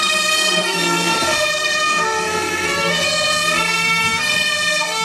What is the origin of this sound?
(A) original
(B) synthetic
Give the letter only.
B